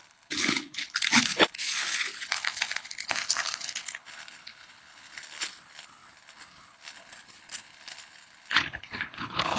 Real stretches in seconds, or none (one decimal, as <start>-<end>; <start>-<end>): none